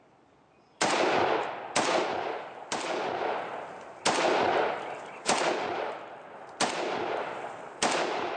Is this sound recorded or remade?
recorded